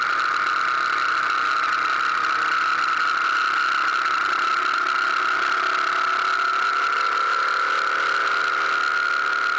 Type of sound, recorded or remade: recorded